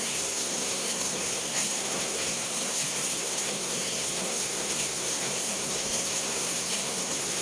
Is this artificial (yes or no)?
yes